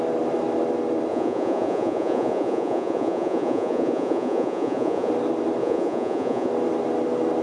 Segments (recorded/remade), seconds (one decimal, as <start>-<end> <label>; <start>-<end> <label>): 0.0-1.1 recorded; 1.1-5.1 remade; 5.1-5.6 recorded; 5.6-6.5 remade; 6.5-7.4 recorded